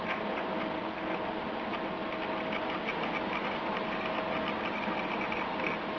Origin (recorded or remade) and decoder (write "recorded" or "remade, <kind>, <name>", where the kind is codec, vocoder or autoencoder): recorded